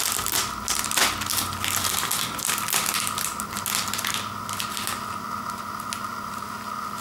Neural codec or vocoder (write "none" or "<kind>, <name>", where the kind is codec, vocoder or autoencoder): none